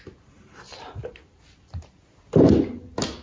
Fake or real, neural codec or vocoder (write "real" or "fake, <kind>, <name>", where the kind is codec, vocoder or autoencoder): real